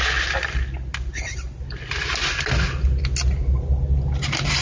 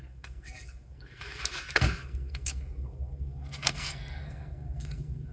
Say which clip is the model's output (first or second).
second